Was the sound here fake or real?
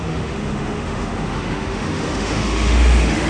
fake